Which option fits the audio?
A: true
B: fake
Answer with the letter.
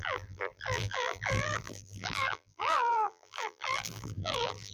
B